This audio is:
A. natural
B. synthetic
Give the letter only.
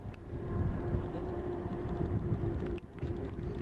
B